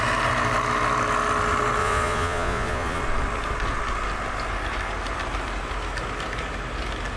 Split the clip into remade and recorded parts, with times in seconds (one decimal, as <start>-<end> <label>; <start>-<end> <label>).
0.0-1.8 recorded; 1.8-3.0 remade; 3.0-7.2 recorded